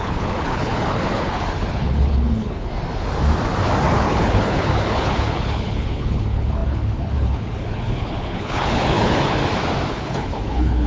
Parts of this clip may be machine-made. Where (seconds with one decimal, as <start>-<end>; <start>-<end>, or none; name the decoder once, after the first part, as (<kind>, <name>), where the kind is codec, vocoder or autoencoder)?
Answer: 0.0-2.7 (codec, HILCodec); 3.9-9.4; 9.9-10.9